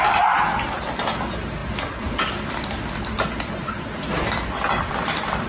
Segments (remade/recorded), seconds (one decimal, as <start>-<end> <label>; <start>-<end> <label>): 0.0-5.5 recorded